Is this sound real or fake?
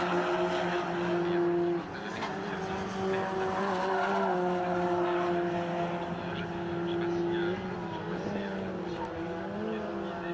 real